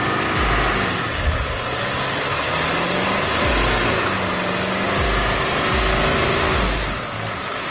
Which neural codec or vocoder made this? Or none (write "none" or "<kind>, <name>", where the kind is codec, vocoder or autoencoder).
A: none